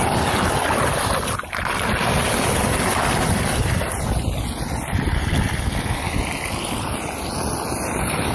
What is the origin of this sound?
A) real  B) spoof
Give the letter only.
A